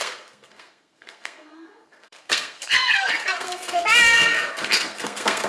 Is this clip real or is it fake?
fake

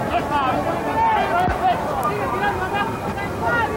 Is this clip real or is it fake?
real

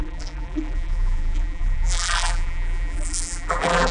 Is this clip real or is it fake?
fake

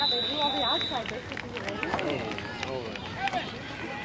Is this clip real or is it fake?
real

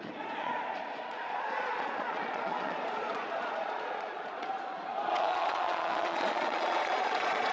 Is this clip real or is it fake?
fake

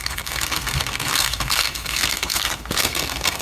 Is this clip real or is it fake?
fake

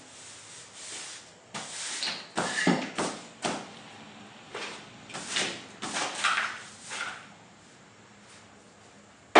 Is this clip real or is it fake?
real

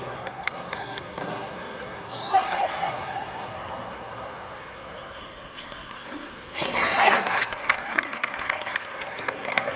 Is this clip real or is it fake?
fake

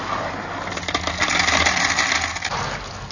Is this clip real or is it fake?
real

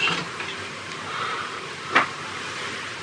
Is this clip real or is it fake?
fake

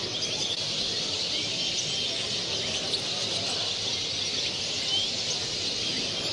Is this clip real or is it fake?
real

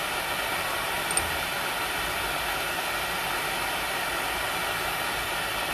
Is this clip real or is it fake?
real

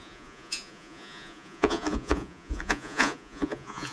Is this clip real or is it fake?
fake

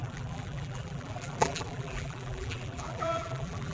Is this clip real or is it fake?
fake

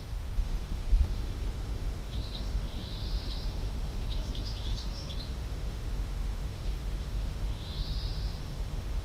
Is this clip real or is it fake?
fake